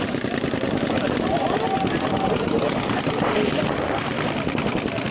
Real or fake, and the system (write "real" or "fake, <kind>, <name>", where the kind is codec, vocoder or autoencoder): fake, vocoder, BigVGAN v2